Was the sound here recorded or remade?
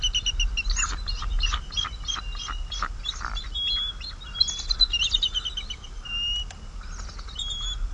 recorded